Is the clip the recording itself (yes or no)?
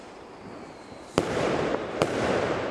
no